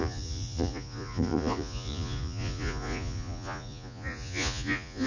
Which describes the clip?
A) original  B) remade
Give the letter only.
B